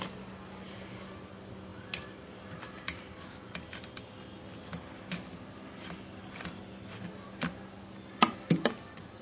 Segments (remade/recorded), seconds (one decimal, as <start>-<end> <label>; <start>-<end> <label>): 0.0-9.2 recorded